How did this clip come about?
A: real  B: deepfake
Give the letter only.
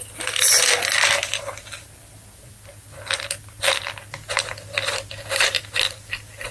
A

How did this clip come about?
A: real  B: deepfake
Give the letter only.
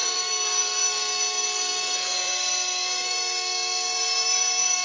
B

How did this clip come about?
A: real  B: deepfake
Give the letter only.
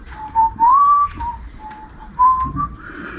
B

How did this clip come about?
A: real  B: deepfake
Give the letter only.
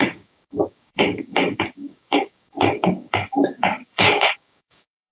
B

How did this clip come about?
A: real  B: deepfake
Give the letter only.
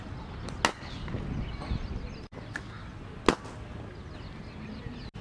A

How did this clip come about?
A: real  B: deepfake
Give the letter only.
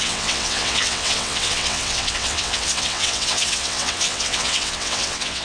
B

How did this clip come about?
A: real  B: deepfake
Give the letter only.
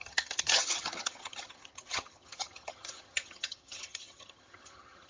B